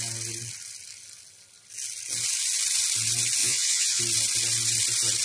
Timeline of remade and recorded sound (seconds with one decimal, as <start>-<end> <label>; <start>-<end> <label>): 0.0-3.4 recorded; 3.4-4.0 remade; 4.0-5.2 recorded